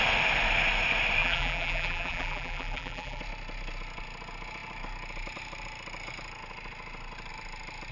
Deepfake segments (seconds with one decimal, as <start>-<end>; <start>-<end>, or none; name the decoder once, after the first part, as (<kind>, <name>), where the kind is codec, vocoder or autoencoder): 1.2-3.2 (vocoder, BigVGAN v2)